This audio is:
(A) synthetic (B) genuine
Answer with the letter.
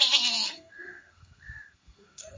A